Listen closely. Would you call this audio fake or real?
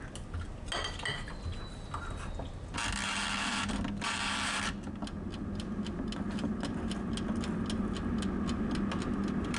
real